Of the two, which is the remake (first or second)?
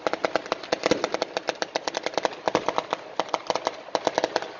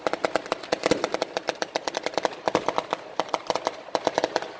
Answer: second